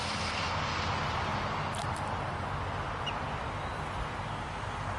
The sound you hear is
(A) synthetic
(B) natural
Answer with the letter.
B